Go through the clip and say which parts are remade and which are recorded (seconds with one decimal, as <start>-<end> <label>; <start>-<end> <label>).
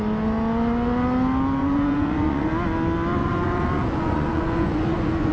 0.0-1.6 recorded; 1.6-2.5 remade; 2.5-3.2 recorded; 3.2-5.3 remade